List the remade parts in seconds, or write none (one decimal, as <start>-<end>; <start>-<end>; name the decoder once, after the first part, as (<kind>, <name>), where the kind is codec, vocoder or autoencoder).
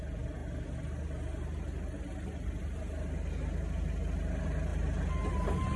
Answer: none